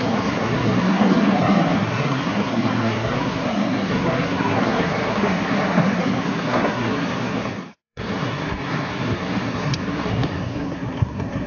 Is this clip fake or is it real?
fake